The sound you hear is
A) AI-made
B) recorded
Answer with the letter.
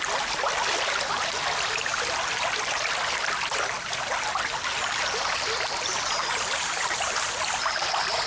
B